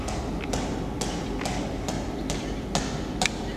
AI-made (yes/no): no